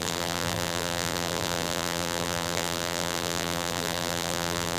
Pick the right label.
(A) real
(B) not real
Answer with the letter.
B